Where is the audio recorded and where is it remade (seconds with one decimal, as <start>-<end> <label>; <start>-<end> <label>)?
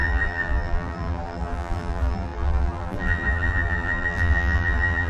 0.0-5.1 remade